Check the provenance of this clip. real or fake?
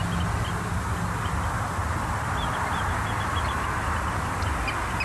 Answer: real